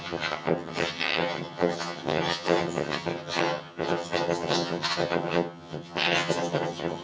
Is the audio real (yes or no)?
no